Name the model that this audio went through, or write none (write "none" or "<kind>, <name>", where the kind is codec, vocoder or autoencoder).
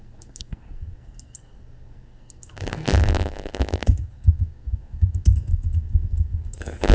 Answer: codec, SNAC